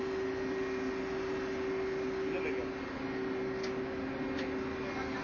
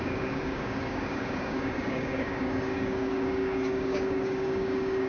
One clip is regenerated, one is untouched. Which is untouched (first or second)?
first